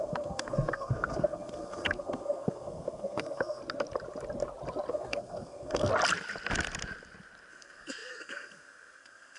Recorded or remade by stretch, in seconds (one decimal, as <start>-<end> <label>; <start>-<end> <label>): 0.0-3.6 remade; 3.6-4.9 recorded; 4.9-5.9 remade; 5.9-7.5 recorded; 7.5-9.4 remade